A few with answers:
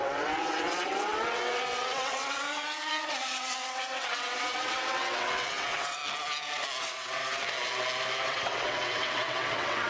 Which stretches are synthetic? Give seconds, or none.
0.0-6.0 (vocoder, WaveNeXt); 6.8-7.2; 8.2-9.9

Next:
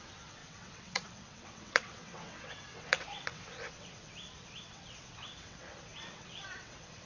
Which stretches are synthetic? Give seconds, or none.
0.0-7.1 (vocoder, WaveNeXt)

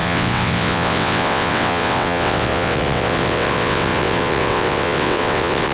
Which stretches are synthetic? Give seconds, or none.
0.0-5.7 (vocoder, WaveNeXt)